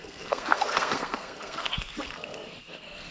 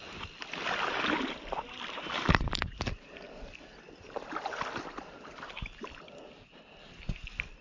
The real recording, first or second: second